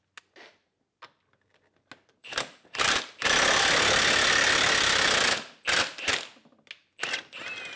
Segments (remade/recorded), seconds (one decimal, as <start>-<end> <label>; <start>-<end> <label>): 0.0-2.2 recorded; 2.2-3.0 remade; 3.0-7.8 recorded